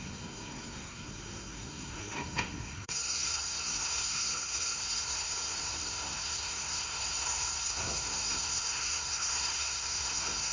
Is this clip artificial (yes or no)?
yes